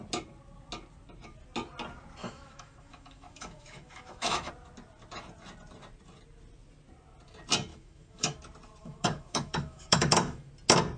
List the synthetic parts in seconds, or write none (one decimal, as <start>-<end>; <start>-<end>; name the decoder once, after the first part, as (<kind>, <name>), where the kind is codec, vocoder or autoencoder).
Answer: 2.2-4.5 (autoencoder, DAC-VAE); 7.7-8.4; 8.8-10.5